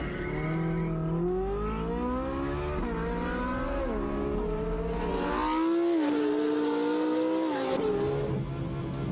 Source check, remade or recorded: recorded